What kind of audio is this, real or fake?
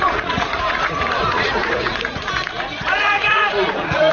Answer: fake